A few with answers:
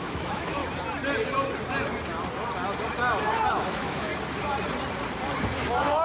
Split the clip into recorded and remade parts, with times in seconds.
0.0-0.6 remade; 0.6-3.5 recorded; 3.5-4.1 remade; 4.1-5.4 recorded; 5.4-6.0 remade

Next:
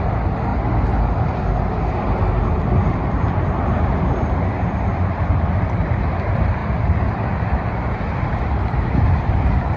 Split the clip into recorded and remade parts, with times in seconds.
0.0-0.5 remade; 0.5-2.5 recorded; 2.5-3.0 remade; 3.0-3.9 recorded; 3.9-6.6 remade; 6.6-8.2 recorded; 8.2-9.8 remade

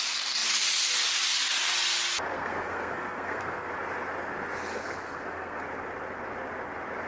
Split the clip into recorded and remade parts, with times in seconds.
0.0-2.3 recorded; 2.3-3.7 remade; 3.7-4.7 recorded; 4.7-5.6 remade; 5.6-7.1 recorded

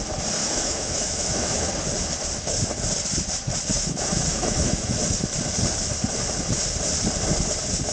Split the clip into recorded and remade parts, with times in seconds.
0.0-0.4 recorded; 0.4-1.7 remade; 1.7-3.7 recorded; 3.7-5.0 remade; 5.0-7.9 recorded

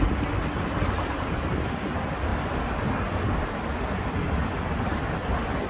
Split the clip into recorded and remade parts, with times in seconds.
0.0-5.7 recorded

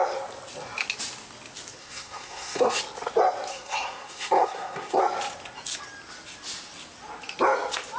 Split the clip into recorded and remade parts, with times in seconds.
0.0-1.8 recorded; 1.8-2.8 remade; 2.8-3.5 recorded; 3.5-5.0 remade; 5.0-8.0 recorded

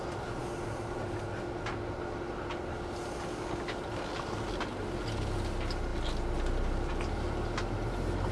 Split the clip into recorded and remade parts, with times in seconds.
0.0-8.3 recorded

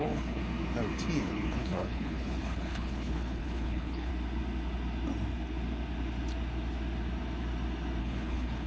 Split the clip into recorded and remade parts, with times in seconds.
0.0-0.4 remade; 0.4-1.2 recorded; 1.2-4.1 remade; 4.1-8.0 recorded; 8.0-8.7 remade